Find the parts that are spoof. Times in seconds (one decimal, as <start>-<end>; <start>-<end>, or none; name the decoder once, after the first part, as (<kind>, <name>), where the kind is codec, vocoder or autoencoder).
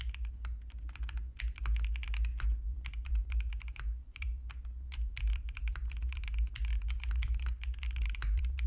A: 2.3-6.3 (vocoder, BigVGAN v2); 6.7-8.7